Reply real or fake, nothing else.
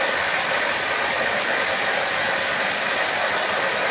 real